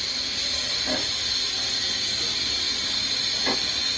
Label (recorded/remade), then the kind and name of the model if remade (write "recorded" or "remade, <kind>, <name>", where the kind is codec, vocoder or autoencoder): recorded